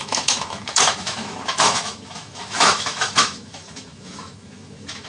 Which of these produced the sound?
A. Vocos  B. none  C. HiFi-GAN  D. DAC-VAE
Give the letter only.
D